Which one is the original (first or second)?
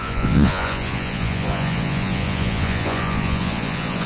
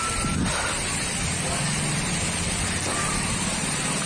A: second